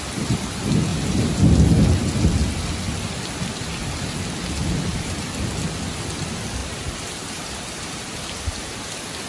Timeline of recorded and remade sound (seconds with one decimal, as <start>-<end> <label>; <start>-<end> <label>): 0.0-0.9 recorded; 0.9-1.4 remade; 1.4-4.6 recorded; 4.6-5.1 remade; 5.1-6.6 recorded; 6.6-8.9 remade; 8.9-9.3 recorded